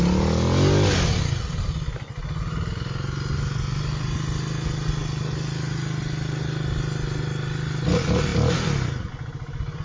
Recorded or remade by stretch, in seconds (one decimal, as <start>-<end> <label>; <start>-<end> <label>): 0.0-9.8 recorded